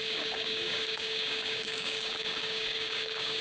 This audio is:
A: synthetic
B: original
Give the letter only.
A